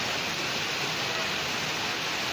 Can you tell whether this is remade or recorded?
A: recorded